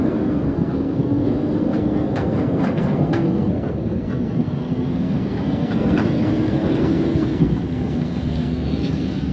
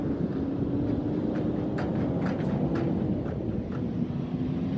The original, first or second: second